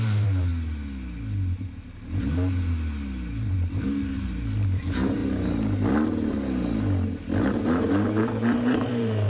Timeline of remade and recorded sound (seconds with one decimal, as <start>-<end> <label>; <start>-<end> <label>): 0.0-0.5 remade; 0.5-3.4 recorded; 3.4-5.2 remade; 5.2-7.5 recorded; 7.5-9.3 remade